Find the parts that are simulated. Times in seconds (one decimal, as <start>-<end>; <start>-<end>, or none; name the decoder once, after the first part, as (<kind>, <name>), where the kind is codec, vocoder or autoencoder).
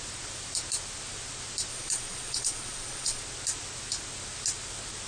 1.7-3.2 (vocoder, Vocos)